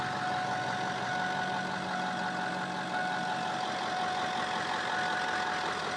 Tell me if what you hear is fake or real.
real